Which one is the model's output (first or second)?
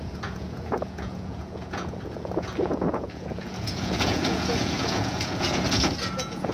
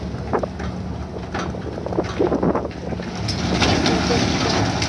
first